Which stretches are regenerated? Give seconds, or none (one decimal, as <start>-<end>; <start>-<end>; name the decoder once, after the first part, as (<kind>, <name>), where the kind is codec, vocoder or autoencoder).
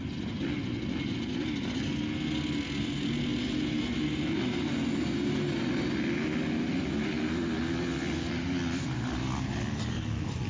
none